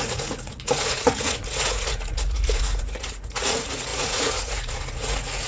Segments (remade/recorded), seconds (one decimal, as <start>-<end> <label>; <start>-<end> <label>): 0.0-5.5 remade